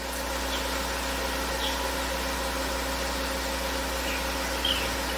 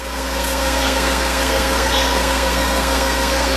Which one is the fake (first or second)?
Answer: second